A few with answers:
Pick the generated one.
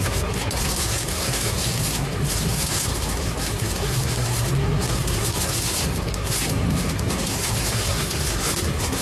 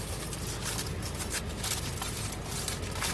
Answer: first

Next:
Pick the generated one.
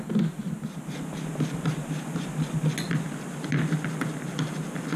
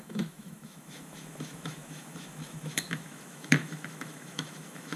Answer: second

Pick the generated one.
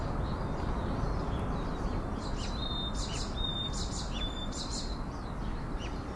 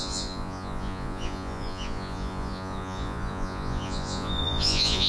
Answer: second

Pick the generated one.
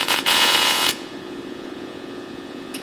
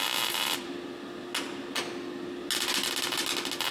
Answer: first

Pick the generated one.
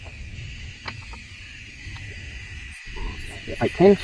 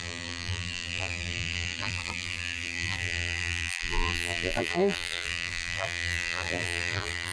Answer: second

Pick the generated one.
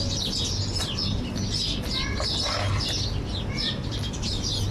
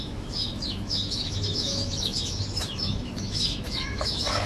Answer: second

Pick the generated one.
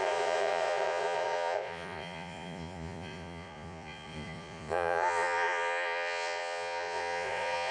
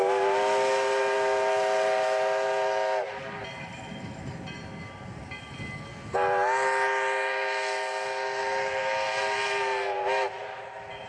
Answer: first